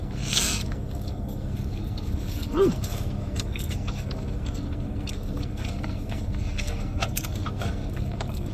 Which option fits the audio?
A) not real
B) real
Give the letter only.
A